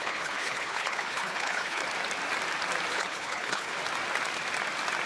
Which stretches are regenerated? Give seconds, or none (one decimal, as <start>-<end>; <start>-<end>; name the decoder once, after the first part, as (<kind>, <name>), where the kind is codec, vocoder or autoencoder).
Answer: 0.0-1.8 (codec, HILCodec); 2.9-3.7